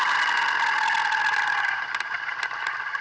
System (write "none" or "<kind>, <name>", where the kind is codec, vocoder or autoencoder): none